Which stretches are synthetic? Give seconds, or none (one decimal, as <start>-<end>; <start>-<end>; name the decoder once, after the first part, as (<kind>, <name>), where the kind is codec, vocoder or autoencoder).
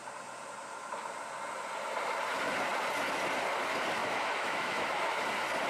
4.0-5.2 (autoencoder, DAC-VAE)